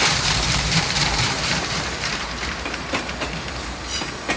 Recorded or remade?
remade